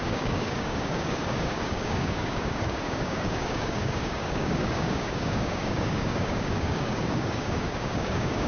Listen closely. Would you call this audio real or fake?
fake